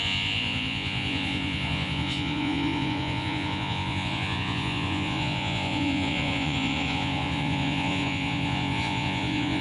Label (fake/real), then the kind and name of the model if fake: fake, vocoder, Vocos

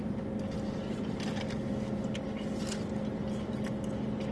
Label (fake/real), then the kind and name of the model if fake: real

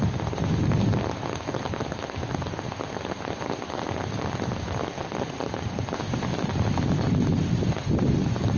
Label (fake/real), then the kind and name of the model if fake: real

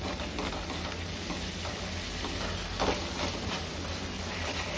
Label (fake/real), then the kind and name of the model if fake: real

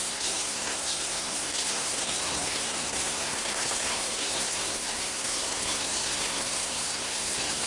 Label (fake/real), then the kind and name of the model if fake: fake, codec, SNAC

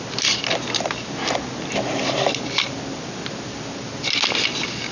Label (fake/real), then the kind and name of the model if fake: real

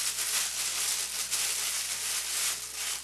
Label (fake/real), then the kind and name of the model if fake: real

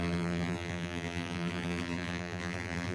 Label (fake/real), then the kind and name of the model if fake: fake, vocoder, BigVGAN v2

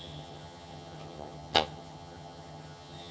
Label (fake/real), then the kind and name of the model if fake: fake, vocoder, HiFi-GAN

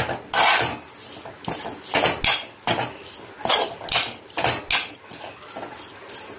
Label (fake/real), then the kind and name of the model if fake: real